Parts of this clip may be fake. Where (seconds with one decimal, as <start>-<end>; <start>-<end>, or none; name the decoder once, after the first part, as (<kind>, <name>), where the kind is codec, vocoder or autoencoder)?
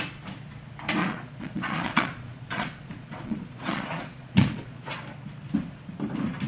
1.0-4.9 (vocoder, Vocos)